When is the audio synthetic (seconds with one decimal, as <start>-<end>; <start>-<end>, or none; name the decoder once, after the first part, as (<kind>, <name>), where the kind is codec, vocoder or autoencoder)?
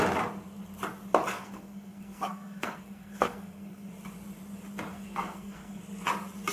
1.3-3.9 (codec, SNAC); 4.9-5.8